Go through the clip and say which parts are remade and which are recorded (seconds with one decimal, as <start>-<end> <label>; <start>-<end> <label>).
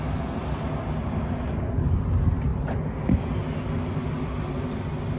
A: 0.0-5.2 recorded